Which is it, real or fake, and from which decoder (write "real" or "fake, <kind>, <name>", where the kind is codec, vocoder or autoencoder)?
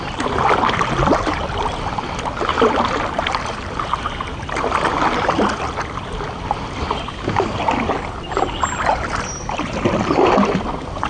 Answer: real